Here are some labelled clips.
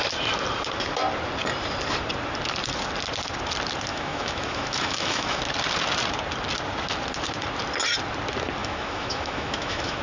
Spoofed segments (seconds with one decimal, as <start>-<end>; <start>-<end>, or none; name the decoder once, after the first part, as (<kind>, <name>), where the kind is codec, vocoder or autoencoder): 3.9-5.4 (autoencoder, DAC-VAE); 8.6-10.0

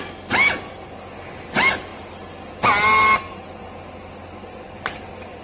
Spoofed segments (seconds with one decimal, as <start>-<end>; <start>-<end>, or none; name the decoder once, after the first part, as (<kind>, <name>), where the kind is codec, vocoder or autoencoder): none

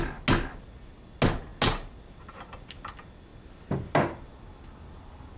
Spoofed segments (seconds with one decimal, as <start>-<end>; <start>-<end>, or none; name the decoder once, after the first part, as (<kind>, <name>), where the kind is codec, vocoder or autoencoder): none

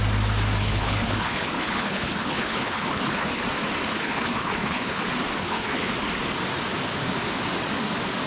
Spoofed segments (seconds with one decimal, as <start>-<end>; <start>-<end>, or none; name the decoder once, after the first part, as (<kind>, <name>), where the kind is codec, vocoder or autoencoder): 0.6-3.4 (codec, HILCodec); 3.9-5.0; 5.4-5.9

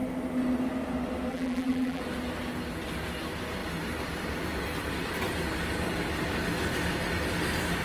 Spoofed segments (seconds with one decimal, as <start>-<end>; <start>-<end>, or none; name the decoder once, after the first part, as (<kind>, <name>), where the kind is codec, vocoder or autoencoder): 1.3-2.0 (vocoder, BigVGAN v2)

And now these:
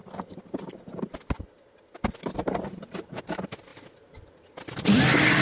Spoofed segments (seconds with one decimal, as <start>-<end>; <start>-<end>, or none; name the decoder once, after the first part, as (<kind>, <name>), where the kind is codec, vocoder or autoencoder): none

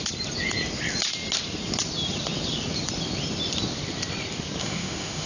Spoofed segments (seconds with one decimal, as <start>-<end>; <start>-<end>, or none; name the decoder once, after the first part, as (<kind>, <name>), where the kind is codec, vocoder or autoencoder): 4.6-5.3 (autoencoder, DAC-VAE)

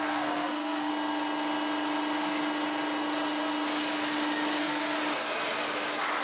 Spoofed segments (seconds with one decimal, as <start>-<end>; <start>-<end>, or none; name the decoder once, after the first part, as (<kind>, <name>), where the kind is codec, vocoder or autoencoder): 0.0-0.9 (codec, SNAC); 4.6-5.0